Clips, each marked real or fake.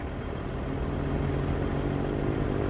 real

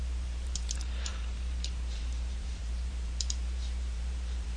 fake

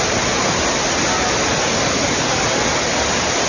real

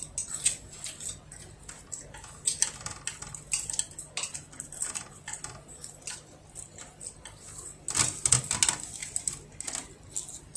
real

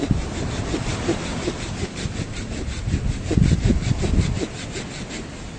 real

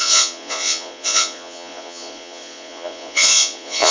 fake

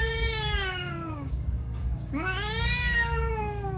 fake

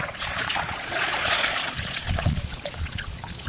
fake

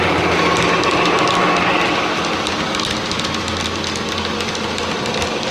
real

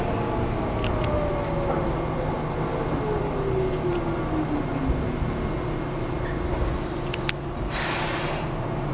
real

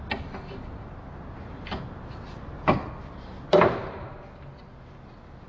real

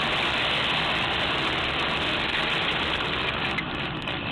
real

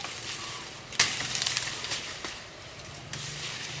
real